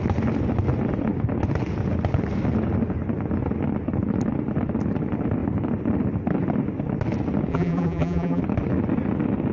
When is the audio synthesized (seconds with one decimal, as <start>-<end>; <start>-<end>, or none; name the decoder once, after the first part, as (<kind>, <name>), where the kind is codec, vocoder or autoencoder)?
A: 7.5-8.4 (vocoder, BigVGAN v2)